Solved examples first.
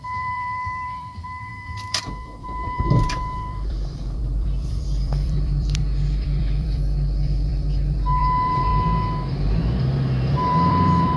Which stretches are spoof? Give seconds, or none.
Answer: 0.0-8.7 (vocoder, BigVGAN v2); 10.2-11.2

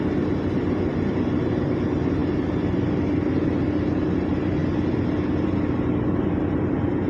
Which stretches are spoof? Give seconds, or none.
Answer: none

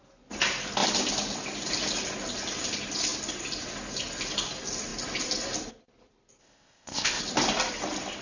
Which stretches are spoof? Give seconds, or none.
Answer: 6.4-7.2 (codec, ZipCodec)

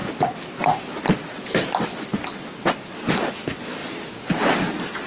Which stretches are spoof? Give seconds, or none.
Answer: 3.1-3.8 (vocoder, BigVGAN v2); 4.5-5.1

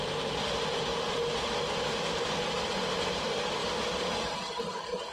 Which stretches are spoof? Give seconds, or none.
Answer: 0.0-3.6 (vocoder, BigVGAN v2)